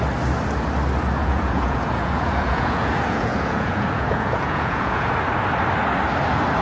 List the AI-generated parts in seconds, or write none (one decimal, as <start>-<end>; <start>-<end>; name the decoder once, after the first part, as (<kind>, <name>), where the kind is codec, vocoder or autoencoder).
1.2-5.1 (vocoder, Vocos)